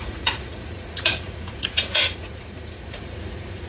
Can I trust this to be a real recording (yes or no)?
no